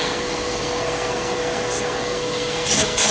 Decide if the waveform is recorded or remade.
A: remade